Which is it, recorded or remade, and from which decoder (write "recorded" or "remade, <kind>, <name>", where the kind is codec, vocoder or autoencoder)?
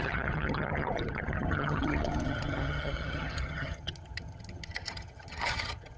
remade, vocoder, HiFi-GAN